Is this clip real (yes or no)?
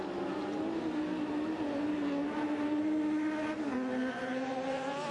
yes